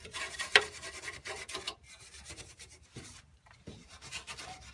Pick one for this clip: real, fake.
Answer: fake